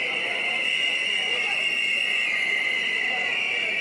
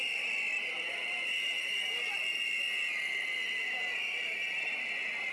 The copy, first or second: first